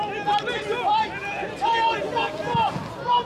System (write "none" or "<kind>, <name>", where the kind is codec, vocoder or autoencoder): none